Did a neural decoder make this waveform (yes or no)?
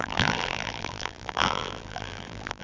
yes